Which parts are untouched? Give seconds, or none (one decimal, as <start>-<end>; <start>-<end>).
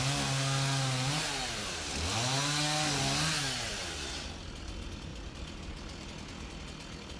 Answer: 0.0-5.1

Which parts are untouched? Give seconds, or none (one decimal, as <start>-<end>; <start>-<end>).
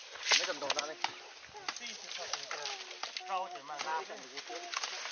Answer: 0.0-5.1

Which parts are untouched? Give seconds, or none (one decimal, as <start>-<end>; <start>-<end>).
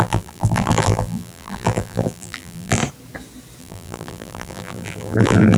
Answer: 2.8-3.6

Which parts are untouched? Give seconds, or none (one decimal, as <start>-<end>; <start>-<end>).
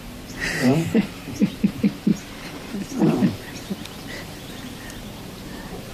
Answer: 2.1-3.1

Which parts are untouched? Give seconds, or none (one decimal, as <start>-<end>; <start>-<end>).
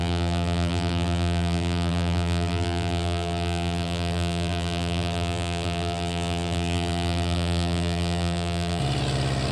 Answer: 8.8-9.5